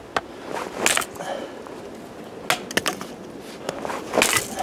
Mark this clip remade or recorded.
recorded